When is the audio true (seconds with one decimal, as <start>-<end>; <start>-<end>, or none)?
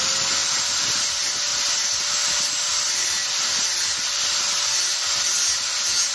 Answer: 0.0-0.4; 1.1-1.5; 2.0-6.1